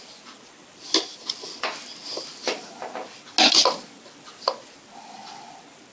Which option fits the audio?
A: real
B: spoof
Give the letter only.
A